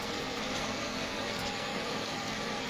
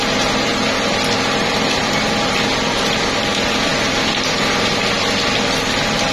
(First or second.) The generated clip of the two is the first